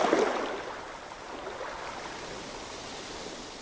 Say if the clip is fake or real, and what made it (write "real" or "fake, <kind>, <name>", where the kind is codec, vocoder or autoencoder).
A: real